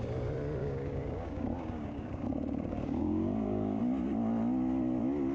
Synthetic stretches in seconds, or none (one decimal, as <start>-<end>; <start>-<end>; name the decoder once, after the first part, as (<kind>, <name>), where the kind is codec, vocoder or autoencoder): 0.6-3.8 (codec, DAC)